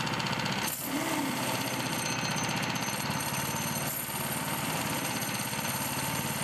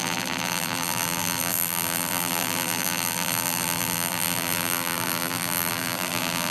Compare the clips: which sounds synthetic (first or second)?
second